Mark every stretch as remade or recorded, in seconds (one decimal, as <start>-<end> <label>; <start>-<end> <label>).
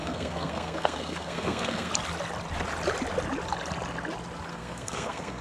0.0-1.9 remade; 1.9-4.5 recorded; 4.5-5.4 remade